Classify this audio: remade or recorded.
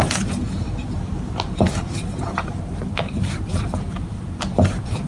remade